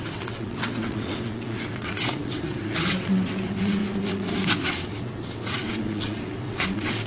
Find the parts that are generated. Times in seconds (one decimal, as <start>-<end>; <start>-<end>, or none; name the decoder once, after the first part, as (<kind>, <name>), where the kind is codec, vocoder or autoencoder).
0.0-7.1 (vocoder, WaveNeXt)